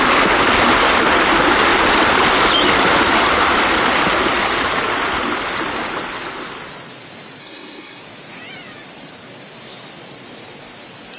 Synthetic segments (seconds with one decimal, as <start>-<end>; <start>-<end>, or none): 7.4-8.0